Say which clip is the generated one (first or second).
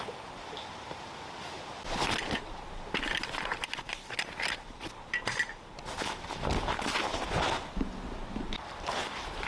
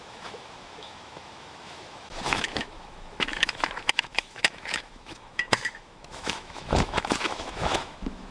second